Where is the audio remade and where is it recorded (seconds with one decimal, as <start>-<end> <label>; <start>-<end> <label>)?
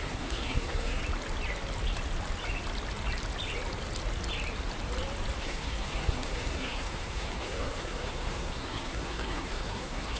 0.0-1.0 remade; 1.0-5.4 recorded; 5.4-10.2 remade